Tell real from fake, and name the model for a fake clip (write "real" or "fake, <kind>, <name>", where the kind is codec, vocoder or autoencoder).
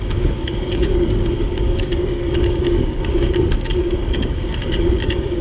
fake, codec, DAC